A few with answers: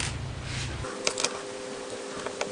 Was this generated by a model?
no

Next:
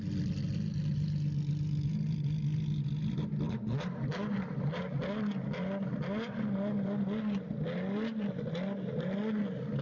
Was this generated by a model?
no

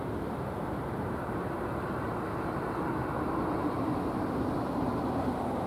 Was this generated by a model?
yes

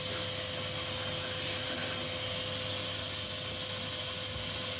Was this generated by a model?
no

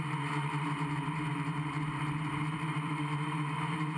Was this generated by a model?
yes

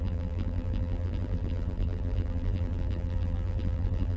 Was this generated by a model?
yes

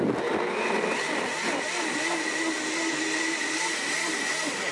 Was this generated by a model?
no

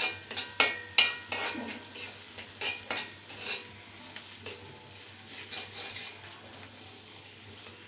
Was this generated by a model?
no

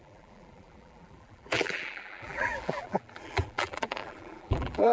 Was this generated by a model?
yes